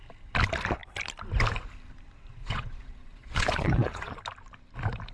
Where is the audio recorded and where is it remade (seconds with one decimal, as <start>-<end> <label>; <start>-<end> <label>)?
0.0-2.4 recorded; 2.4-4.2 remade; 4.2-5.1 recorded